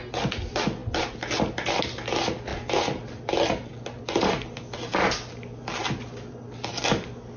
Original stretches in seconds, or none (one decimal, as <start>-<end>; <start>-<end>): 0.0-7.4

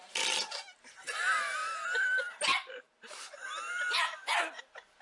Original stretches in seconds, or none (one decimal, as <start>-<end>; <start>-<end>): 0.0-5.0